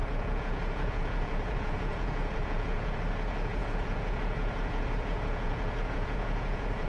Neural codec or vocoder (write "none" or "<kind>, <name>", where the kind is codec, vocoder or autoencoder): vocoder, Vocos